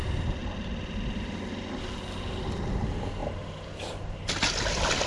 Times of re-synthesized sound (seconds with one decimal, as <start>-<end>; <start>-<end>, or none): none